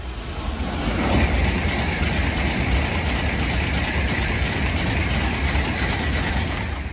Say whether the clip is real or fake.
real